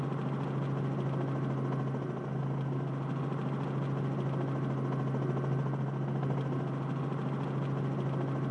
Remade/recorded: recorded